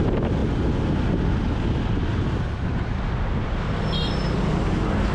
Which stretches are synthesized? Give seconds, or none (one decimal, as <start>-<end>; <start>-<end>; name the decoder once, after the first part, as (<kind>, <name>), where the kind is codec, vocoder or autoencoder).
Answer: none